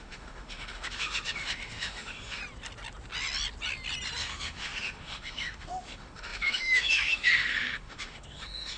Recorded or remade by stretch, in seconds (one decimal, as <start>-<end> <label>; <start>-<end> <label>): 0.0-2.4 remade; 2.4-4.2 recorded; 4.2-8.8 remade